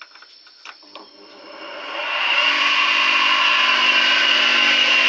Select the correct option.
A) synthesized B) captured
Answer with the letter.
B